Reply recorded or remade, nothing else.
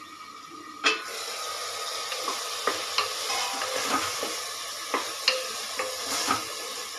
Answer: recorded